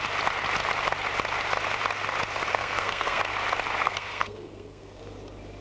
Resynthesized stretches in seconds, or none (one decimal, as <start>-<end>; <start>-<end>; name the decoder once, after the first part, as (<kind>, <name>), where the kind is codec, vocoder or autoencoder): 2.5-3.2 (codec, SNAC); 3.8-5.0